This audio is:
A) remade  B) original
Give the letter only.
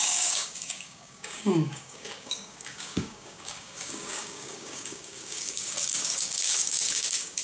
A